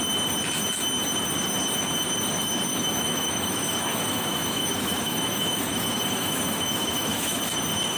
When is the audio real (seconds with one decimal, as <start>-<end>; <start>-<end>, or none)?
0.0-2.7; 7.4-8.0